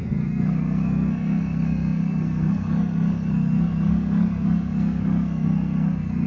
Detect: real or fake fake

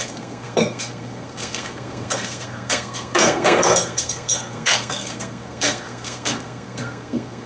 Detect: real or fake fake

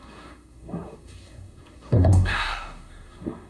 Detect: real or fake fake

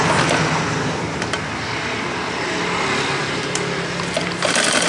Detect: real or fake real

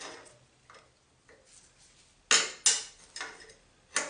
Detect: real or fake real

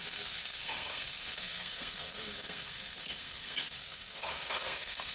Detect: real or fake fake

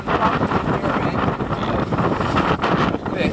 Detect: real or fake real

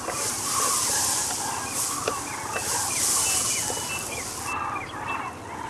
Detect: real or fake real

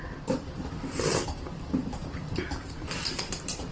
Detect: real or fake real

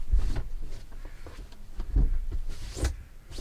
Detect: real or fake real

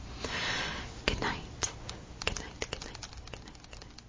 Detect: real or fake real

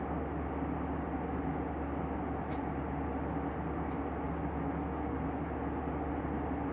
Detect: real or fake real